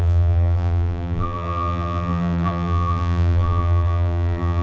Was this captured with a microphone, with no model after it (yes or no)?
no